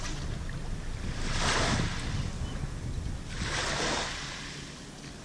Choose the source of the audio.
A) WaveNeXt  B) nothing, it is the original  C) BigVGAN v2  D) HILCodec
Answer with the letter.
B